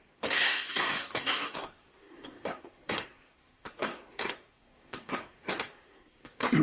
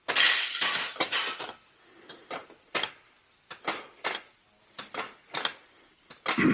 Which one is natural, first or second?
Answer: second